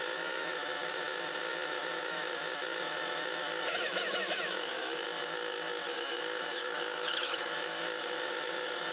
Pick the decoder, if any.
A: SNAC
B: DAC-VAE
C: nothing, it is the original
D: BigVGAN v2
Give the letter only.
B